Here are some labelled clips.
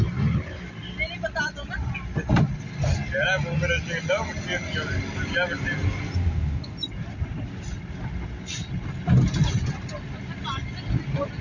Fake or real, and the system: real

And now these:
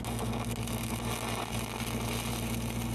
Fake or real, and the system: real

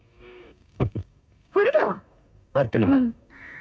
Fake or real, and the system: fake, codec, DAC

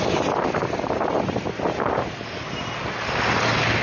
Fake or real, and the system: real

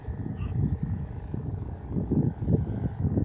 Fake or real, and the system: fake, codec, DAC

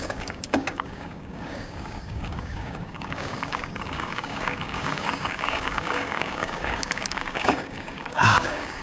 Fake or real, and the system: fake, codec, DAC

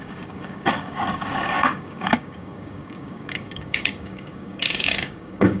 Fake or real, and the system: fake, codec, DAC